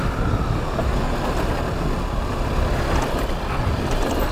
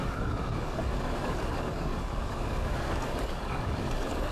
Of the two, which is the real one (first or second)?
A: first